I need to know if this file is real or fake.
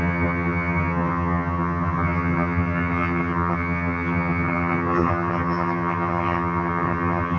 fake